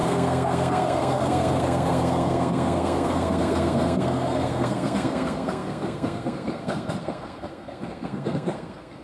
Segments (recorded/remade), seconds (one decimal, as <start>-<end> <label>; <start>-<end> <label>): 0.0-9.0 remade